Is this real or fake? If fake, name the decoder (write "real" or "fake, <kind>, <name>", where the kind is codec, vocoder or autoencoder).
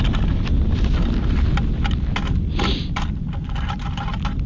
real